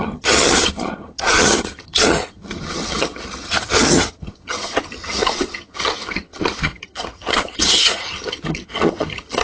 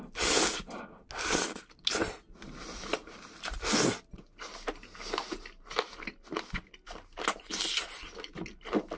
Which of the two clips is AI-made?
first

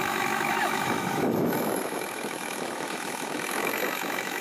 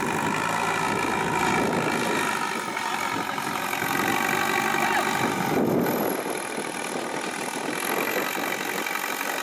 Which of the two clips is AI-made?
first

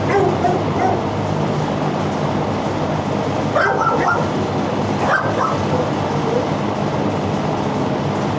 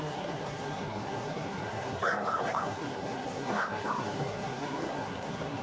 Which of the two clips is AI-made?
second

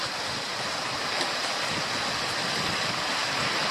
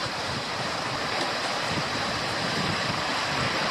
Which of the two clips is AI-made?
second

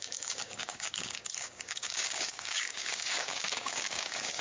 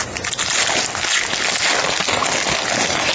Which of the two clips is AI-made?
first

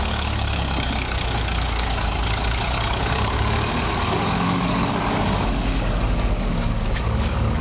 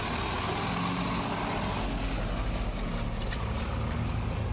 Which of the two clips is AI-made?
first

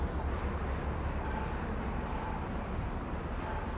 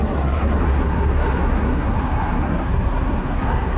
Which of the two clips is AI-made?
second